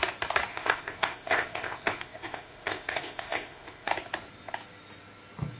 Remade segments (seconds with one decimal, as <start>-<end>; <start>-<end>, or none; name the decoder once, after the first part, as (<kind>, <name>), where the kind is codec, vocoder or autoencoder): 0.5-3.9 (codec, ZipCodec)